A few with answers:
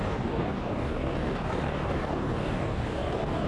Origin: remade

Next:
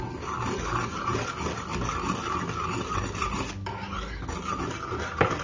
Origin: recorded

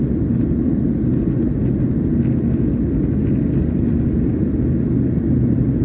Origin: recorded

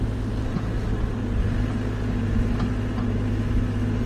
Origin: recorded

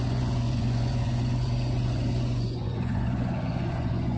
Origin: remade